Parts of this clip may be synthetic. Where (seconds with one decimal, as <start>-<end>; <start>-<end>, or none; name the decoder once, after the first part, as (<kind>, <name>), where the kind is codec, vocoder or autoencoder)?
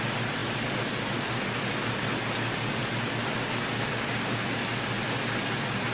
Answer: none